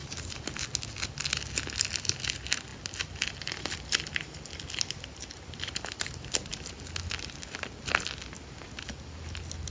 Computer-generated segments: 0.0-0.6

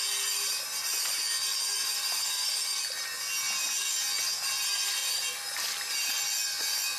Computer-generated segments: 1.8-3.0; 5.0-6.1

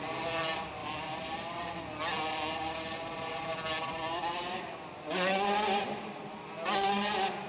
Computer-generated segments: none

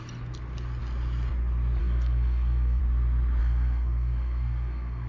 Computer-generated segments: 1.8-2.8; 3.4-5.1

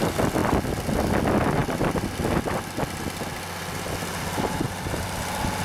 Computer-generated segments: none

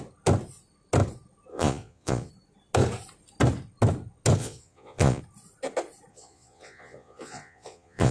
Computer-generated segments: 1.5-2.3; 4.4-5.2; 6.1-8.1

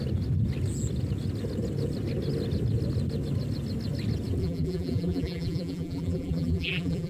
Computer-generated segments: 4.4-7.1